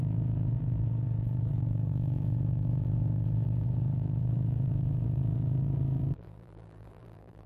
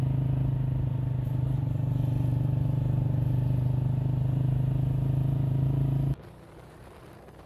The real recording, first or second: second